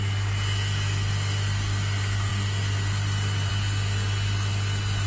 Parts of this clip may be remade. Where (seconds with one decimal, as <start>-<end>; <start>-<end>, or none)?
none